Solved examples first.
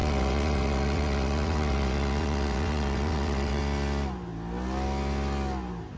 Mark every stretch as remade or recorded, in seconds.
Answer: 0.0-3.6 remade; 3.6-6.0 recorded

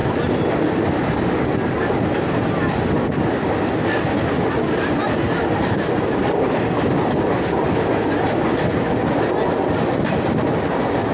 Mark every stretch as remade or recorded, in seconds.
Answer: 0.0-11.1 recorded

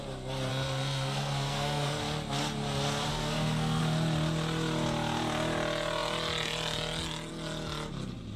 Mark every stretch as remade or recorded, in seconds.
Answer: 0.0-0.5 recorded; 0.5-2.0 remade; 2.0-3.1 recorded; 3.1-3.8 remade; 3.8-8.4 recorded

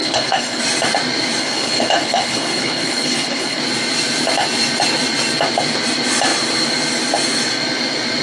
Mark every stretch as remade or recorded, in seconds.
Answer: 0.0-0.6 remade; 0.6-1.4 recorded; 1.4-3.6 remade; 3.6-8.2 recorded

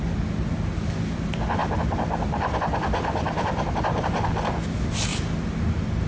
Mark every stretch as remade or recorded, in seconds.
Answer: 0.0-1.6 recorded; 1.6-3.7 remade; 3.7-6.1 recorded

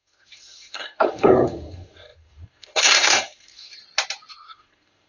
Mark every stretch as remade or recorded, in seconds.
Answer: 0.0-3.8 remade; 3.8-4.3 recorded; 4.3-5.1 remade

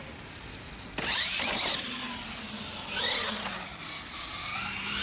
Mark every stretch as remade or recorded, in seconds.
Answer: 0.0-3.7 recorded; 3.7-5.0 remade